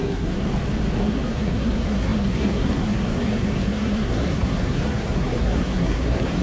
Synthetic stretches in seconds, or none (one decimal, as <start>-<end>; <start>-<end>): 0.0-0.5; 1.0-6.4